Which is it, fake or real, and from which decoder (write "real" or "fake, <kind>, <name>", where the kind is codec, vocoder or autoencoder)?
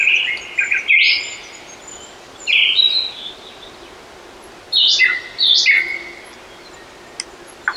real